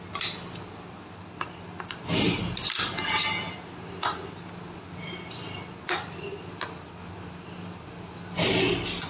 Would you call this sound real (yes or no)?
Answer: yes